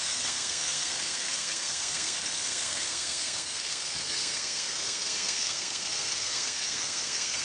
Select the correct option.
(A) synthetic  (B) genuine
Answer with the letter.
A